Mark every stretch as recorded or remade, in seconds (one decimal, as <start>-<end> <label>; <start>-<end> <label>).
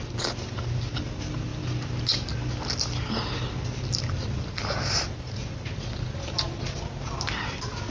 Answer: 0.0-7.9 recorded